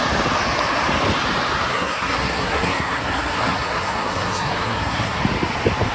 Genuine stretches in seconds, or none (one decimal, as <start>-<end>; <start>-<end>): 0.0-1.7; 5.2-5.9